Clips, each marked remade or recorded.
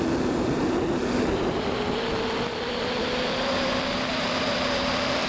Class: remade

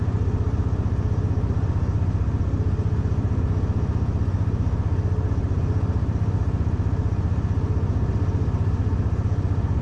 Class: recorded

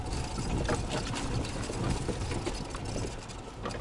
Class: recorded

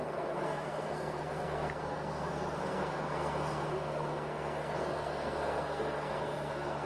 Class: remade